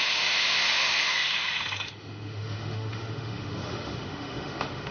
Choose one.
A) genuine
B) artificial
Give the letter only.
B